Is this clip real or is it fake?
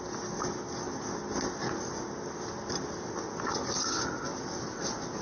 real